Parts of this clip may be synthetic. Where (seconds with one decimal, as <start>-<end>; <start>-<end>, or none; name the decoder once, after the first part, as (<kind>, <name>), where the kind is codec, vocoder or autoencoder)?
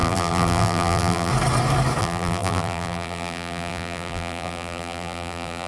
0.0-1.3 (vocoder, BigVGAN v2); 2.0-5.7